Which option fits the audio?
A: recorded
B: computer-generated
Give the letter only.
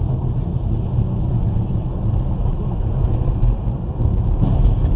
A